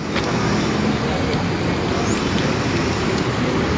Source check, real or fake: real